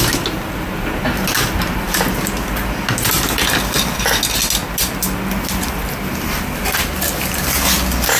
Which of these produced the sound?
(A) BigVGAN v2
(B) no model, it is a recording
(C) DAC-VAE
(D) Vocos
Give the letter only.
B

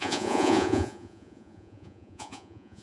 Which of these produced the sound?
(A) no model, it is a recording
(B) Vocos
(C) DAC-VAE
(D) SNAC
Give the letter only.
B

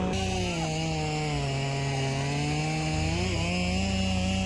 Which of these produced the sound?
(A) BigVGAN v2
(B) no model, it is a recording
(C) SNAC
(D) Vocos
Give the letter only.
B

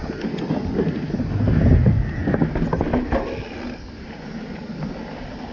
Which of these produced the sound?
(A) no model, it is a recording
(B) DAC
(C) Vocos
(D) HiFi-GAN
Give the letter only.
A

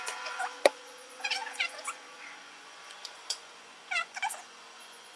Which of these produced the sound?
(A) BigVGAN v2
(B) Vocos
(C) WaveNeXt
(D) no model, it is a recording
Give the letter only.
B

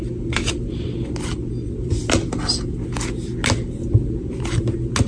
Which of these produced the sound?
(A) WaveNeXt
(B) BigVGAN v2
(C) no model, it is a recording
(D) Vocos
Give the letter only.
C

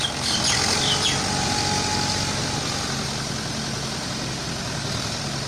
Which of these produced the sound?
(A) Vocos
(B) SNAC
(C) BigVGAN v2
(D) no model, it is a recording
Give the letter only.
D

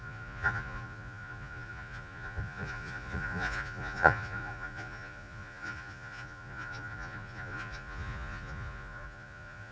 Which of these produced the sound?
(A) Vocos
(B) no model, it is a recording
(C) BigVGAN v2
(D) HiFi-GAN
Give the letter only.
A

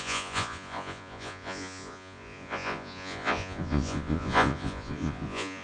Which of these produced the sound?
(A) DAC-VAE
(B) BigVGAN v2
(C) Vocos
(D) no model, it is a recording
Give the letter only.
C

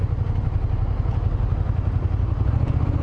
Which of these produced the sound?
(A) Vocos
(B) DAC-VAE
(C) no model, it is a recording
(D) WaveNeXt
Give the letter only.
C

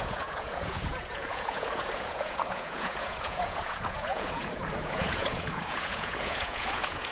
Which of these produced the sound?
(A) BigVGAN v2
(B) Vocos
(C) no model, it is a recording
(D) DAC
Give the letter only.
B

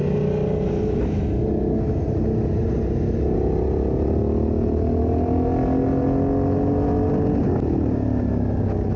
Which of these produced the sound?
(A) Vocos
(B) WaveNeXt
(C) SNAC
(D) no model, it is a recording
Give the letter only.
D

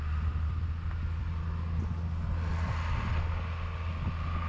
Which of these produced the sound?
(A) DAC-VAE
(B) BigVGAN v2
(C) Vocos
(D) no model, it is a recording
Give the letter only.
D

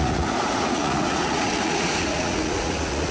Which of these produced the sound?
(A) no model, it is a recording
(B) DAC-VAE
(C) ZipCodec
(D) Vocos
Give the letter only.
D